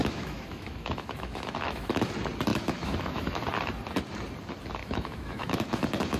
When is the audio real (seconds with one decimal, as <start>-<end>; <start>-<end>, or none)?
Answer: 2.1-2.5; 3.4-4.8